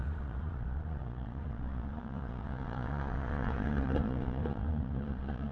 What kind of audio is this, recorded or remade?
remade